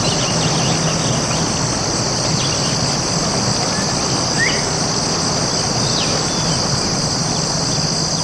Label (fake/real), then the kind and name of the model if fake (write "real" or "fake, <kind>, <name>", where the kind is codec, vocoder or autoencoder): real